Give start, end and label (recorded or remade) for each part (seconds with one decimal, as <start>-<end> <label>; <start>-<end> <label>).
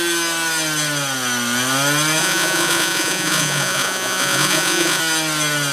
0.0-2.2 recorded; 2.2-5.0 remade; 5.0-5.7 recorded